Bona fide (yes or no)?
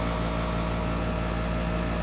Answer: yes